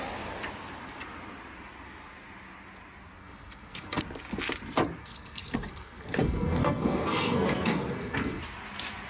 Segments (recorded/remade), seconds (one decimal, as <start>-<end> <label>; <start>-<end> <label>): 0.0-3.2 recorded; 3.2-4.0 remade; 4.0-5.0 recorded; 5.0-8.4 remade; 8.4-9.1 recorded

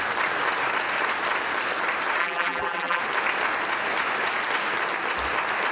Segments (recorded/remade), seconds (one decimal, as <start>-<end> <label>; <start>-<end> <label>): 0.0-2.2 recorded; 2.2-3.0 remade; 3.0-5.7 recorded

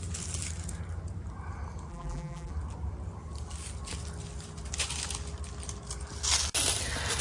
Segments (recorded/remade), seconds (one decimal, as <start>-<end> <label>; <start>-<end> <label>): 0.0-1.9 recorded; 1.9-2.5 remade; 2.5-7.2 recorded